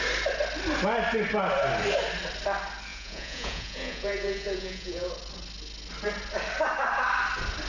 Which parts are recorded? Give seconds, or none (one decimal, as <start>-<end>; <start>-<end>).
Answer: 0.0-2.9; 5.1-7.7

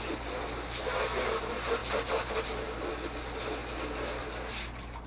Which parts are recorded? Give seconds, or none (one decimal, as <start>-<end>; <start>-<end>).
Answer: 0.0-5.1

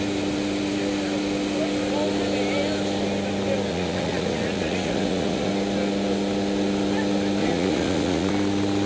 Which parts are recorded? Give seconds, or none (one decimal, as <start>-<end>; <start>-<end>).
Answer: 0.0-3.7; 5.5-7.4; 8.3-8.9

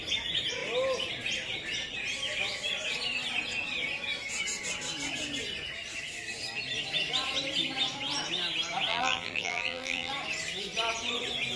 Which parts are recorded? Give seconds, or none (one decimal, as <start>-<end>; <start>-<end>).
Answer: 0.0-8.9; 10.1-11.6

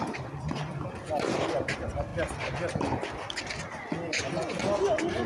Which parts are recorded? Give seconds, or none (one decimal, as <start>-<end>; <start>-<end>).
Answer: 0.0-4.1; 4.6-5.3

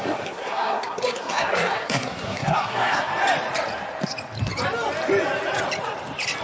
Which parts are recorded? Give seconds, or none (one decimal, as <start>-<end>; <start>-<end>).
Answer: 3.1-6.4

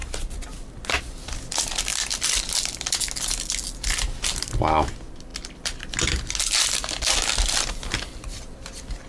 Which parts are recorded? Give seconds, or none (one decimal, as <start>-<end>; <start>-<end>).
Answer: 0.0-9.1

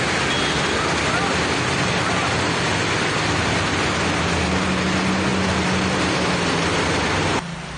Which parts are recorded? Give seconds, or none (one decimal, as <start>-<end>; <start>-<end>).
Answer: 0.0-7.8